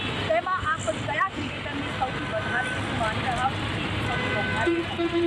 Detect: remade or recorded recorded